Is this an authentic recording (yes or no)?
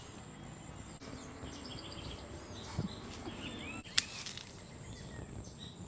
yes